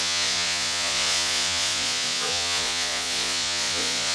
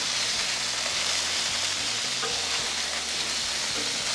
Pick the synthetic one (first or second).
first